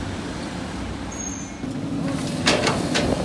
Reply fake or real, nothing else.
real